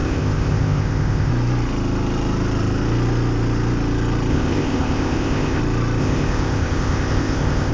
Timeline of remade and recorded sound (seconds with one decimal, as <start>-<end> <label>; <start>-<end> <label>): 0.0-1.3 remade; 1.3-4.3 recorded; 4.3-5.6 remade; 5.6-6.0 recorded; 6.0-7.7 remade